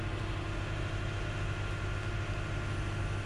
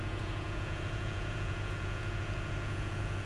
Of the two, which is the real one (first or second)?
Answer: first